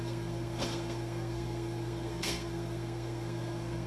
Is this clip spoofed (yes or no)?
yes